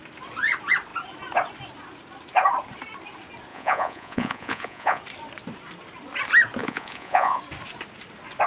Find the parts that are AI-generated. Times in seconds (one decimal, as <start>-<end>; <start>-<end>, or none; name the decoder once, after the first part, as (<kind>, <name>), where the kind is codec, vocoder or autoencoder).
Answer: 3.5-5.0 (vocoder, Vocos); 6.6-7.4